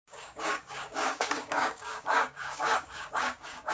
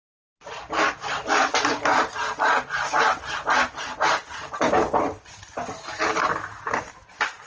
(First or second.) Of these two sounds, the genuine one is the second